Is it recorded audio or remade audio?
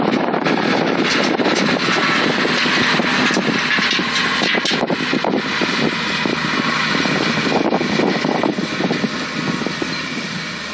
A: recorded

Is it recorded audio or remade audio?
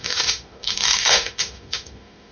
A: remade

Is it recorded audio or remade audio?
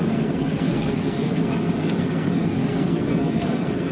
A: remade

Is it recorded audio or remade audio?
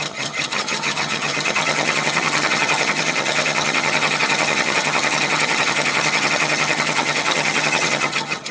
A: remade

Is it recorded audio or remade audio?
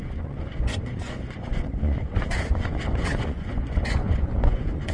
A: remade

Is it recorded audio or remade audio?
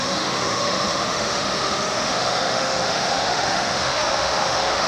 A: remade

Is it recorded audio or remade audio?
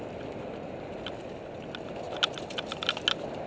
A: recorded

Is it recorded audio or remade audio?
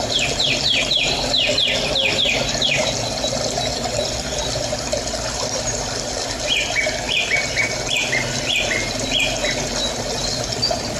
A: recorded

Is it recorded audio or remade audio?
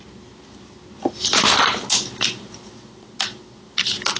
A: recorded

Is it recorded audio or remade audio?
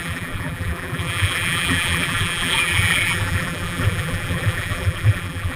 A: remade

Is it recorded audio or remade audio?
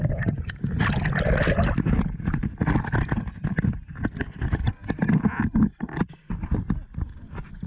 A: recorded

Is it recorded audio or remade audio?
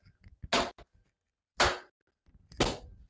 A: recorded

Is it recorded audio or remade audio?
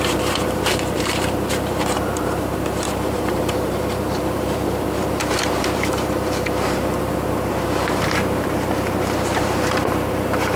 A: remade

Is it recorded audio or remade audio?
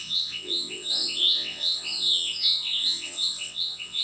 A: remade